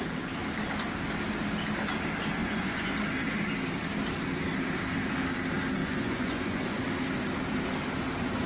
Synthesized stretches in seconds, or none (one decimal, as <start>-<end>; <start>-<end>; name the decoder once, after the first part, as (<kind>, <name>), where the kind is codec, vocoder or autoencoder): 2.4-2.9 (vocoder, Vocos); 5.8-6.8